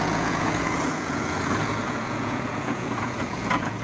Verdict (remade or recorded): remade